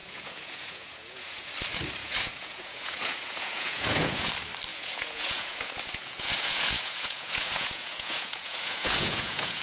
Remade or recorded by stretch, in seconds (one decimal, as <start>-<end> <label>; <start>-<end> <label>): 0.0-1.5 remade; 1.5-2.0 recorded; 2.0-4.3 remade; 4.3-4.7 recorded; 4.7-9.6 remade